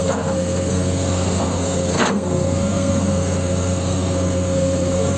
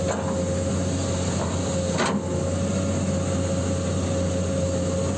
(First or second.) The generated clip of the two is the first